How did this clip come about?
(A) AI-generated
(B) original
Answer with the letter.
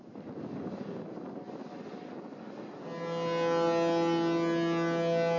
B